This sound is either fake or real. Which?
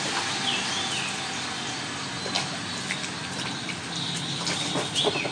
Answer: real